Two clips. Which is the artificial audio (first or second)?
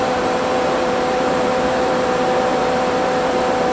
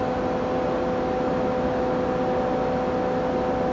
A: first